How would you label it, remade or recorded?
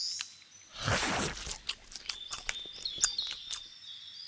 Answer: recorded